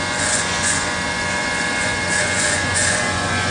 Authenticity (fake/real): fake